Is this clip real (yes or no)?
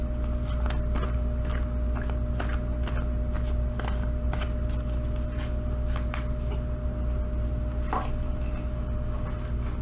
yes